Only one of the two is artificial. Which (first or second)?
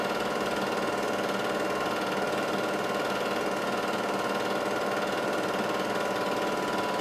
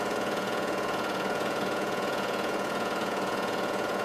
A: second